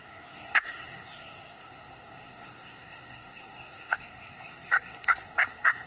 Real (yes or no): no